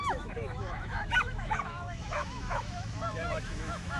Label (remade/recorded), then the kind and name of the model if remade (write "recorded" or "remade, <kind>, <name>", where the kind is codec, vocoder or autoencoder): remade, autoencoder, DAC-VAE